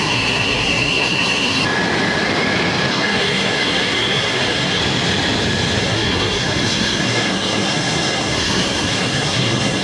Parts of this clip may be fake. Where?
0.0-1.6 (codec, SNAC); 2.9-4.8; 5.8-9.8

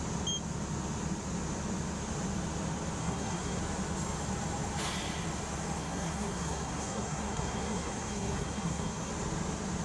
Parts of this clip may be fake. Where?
3.0-3.6 (codec, SNAC); 5.8-9.1

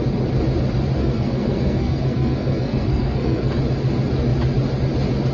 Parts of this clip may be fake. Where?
1.0-3.6 (codec, SNAC)

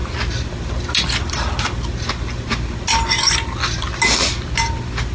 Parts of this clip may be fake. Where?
none

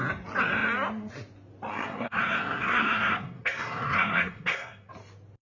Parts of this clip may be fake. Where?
1.7-4.9 (codec, SNAC)